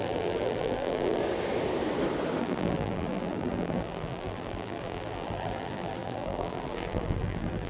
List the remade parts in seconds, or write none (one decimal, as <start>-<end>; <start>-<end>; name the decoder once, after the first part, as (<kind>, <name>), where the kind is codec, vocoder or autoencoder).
0.0-1.2 (vocoder, BigVGAN v2); 2.4-7.7